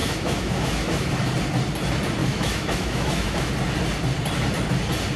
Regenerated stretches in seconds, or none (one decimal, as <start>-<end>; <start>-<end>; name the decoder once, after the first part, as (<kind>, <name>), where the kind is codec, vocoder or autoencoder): 0.0-1.1 (autoencoder, DAC-VAE); 2.2-3.5